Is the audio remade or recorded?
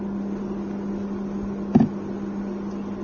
recorded